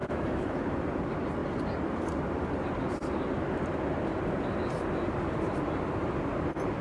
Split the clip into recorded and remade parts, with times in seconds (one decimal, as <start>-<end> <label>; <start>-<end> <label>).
0.0-0.6 remade; 0.6-6.8 recorded